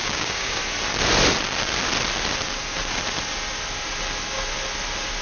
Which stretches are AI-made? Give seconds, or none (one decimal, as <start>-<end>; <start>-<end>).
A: 0.0-0.6